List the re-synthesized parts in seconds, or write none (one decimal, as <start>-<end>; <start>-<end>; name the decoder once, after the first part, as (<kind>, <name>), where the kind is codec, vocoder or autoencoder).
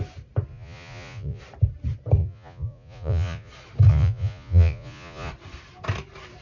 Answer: 0.5-1.4 (vocoder, Vocos); 2.2-3.5; 3.9-5.3